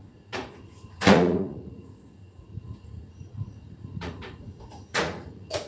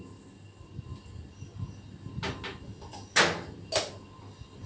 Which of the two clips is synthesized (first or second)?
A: first